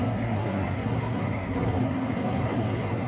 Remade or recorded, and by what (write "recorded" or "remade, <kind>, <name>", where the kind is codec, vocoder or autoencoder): remade, codec, SNAC